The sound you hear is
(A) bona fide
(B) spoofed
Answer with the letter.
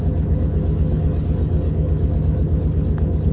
B